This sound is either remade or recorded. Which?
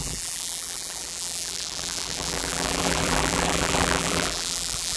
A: remade